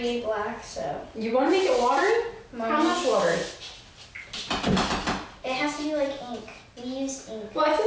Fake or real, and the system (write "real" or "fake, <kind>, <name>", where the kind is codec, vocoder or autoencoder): real